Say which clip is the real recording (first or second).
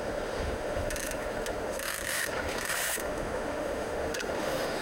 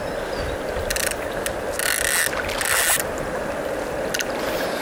second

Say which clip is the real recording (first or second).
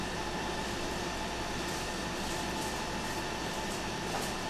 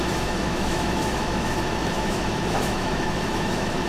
first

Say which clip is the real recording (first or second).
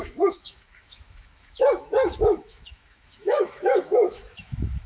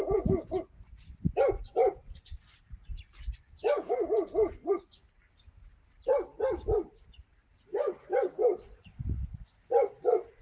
second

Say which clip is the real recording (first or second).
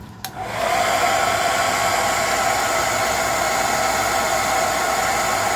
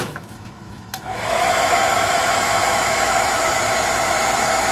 first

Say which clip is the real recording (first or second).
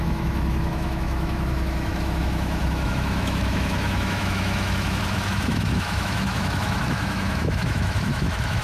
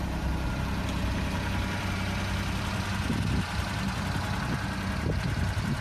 second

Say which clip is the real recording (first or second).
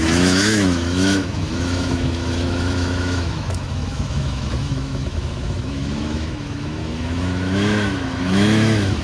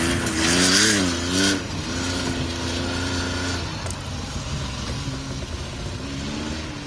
second